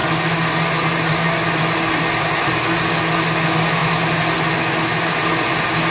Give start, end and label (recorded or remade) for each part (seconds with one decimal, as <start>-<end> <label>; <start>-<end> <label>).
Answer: 0.0-5.9 recorded